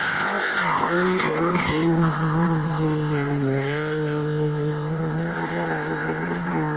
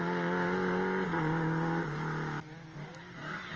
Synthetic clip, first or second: first